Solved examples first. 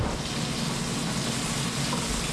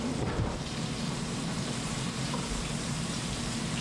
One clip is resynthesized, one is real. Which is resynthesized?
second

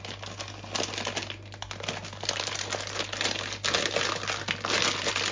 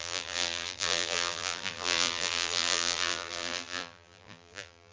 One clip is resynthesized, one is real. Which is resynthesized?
second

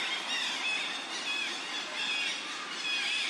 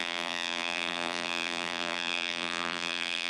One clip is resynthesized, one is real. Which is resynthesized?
second